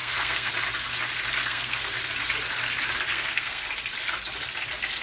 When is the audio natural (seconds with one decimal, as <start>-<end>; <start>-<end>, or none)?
0.5-1.4; 1.9-3.1; 3.6-5.0